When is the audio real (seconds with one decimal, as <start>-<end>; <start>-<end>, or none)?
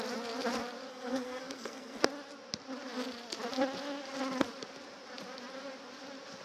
0.0-0.9; 2.0-6.4